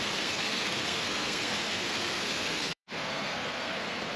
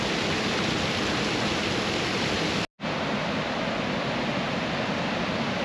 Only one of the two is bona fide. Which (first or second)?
second